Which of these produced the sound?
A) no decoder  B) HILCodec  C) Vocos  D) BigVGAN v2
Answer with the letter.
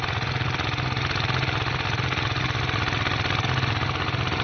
A